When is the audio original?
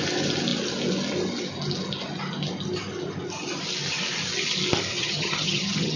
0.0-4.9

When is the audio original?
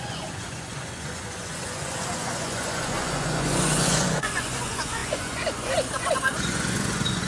none